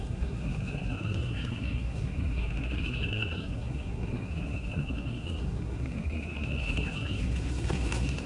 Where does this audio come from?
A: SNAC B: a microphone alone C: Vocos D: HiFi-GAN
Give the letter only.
A